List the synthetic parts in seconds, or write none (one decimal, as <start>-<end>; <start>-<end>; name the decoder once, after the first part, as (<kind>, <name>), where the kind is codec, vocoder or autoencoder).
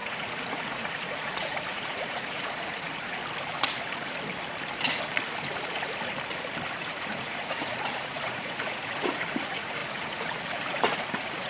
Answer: 0.0-3.2 (vocoder, Vocos); 6.7-11.5